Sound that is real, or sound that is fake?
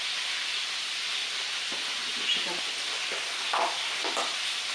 real